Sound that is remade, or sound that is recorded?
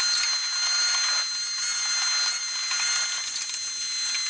recorded